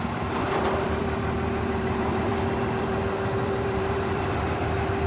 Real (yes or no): no